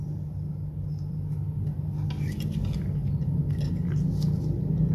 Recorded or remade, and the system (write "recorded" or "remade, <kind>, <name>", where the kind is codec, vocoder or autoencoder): recorded